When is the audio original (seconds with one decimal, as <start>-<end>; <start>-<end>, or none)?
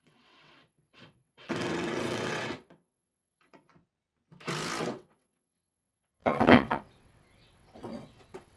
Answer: 3.7-4.8